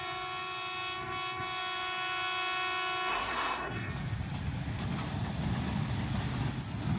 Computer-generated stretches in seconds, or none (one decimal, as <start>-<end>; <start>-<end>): 3.1-3.9